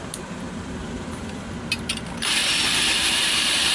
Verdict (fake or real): real